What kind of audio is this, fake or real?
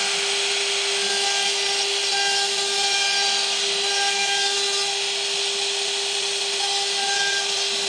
real